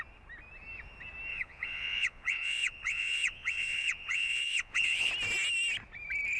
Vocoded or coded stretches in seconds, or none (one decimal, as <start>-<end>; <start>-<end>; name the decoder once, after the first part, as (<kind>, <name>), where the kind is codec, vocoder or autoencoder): 1.3-5.1 (vocoder, Vocos)